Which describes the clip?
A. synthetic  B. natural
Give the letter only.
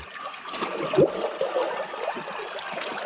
B